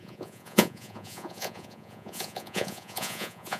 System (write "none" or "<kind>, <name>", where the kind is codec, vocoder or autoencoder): vocoder, Vocos